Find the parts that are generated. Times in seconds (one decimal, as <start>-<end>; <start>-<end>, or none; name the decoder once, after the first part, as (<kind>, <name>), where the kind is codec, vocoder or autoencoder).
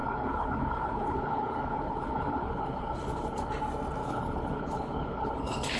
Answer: 0.0-3.5 (codec, HILCodec); 4.0-5.8